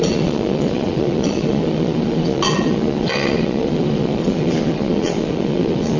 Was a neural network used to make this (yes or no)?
yes